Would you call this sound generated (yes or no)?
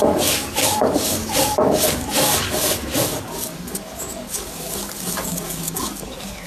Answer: yes